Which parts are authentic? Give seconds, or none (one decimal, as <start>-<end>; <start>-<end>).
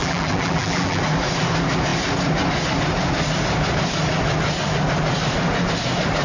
1.0-6.2